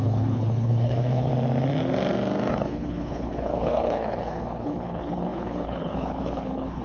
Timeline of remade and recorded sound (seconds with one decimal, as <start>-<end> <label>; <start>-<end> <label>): 0.0-1.3 remade; 1.3-2.5 recorded; 2.5-6.8 remade